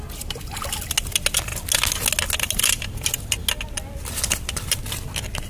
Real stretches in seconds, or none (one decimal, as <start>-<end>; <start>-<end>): 0.0-5.5